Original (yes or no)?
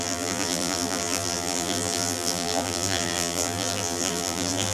no